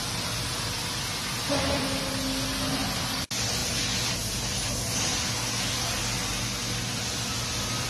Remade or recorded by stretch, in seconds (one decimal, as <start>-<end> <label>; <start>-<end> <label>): 0.0-1.2 recorded; 1.2-2.0 remade; 2.0-7.9 recorded